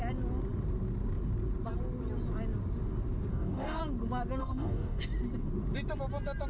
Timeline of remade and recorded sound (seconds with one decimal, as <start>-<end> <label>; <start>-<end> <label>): 0.0-3.3 recorded; 3.3-3.8 remade; 3.8-4.4 recorded; 4.4-5.0 remade; 5.0-6.5 recorded